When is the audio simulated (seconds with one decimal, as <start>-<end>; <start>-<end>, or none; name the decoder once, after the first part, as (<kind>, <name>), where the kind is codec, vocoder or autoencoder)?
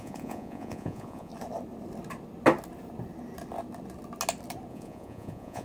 0.0-1.3 (vocoder, Vocos); 4.7-5.6